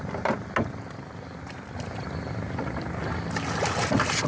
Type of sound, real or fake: real